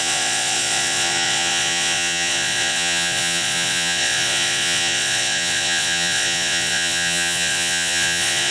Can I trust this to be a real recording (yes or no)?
no